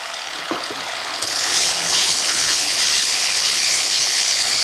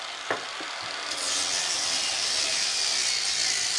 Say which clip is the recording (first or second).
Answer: second